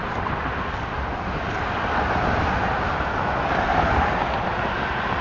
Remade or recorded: recorded